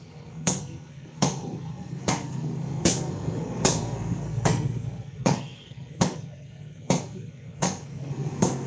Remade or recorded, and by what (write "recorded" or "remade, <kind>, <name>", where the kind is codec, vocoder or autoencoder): remade, codec, SNAC